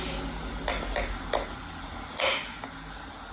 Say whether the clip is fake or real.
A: real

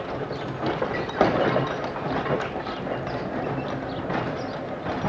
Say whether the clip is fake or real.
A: real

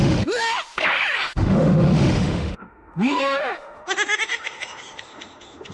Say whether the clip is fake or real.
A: fake